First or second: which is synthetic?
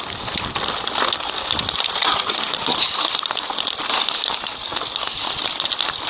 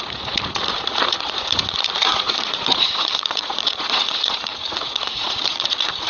second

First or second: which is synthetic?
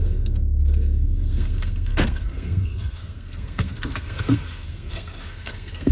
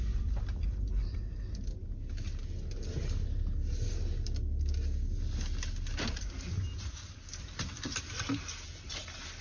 first